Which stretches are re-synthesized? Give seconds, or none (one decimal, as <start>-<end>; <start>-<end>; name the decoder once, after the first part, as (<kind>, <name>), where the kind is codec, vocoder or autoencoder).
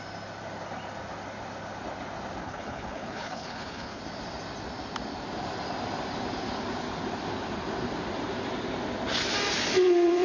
2.4-4.0 (codec, HILCodec)